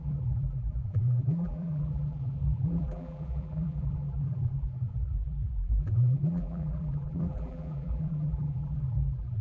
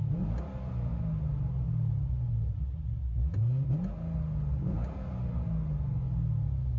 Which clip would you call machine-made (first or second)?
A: first